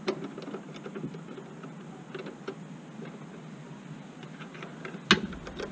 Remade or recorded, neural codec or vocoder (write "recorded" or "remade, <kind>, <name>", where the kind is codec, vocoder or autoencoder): recorded